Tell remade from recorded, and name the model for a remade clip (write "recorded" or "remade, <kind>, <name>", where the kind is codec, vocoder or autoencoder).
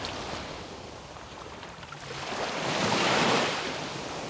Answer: remade, vocoder, BigVGAN v2